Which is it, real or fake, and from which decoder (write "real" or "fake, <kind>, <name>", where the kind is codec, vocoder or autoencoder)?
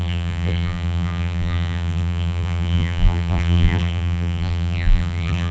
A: fake, vocoder, BigVGAN v2